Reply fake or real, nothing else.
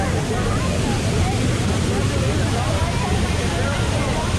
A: real